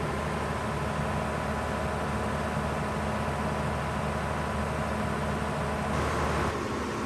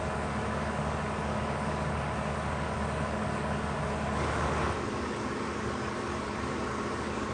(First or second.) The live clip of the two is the first